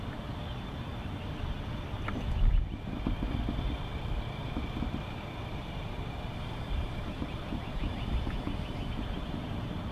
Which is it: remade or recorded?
remade